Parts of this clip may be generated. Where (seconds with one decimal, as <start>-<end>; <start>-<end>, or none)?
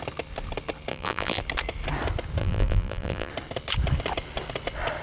0.9-1.4; 2.4-3.3